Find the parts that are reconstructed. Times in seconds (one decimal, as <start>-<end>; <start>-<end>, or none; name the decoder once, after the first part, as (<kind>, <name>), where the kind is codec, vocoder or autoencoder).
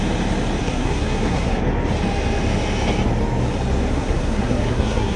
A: 0.6-1.6 (codec, SNAC); 3.9-5.2